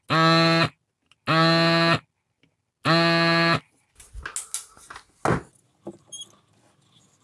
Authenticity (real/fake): real